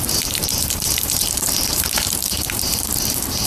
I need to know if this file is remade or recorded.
remade